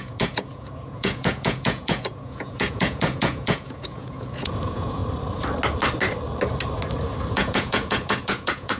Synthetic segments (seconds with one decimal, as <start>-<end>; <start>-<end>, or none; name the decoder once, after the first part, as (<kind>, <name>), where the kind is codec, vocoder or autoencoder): 0.0-5.0 (vocoder, Vocos); 7.3-8.8